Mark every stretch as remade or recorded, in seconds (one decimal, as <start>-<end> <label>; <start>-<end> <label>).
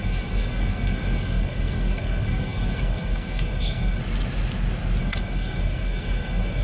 0.0-4.0 remade; 4.0-5.0 recorded; 5.0-6.6 remade